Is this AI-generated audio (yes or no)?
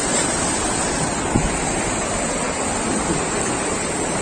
no